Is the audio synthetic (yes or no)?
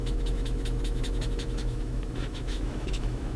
yes